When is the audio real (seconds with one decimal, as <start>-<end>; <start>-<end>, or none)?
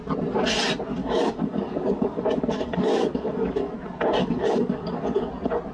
0.0-1.0; 3.7-4.2; 5.3-5.7